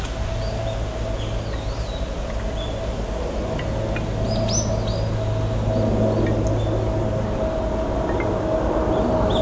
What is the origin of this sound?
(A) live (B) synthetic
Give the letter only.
A